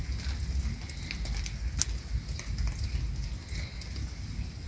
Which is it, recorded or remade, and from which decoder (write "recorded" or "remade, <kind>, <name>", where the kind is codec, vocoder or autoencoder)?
recorded